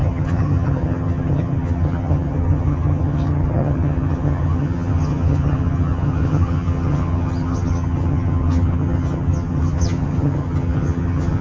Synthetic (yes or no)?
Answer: yes